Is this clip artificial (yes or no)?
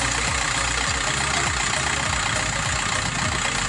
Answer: no